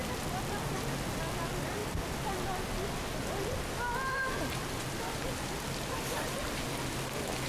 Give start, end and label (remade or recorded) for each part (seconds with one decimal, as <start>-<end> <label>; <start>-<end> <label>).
0.0-7.5 recorded